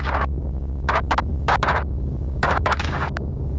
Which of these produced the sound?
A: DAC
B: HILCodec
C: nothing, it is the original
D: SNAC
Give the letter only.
A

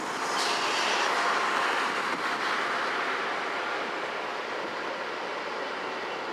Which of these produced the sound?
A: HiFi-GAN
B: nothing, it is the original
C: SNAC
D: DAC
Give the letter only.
B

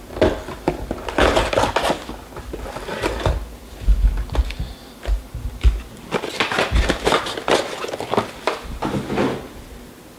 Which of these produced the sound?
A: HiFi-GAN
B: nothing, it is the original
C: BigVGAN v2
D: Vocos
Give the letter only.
B